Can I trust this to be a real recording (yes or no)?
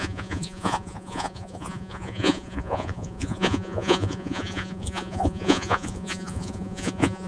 no